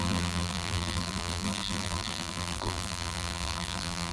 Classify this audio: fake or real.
fake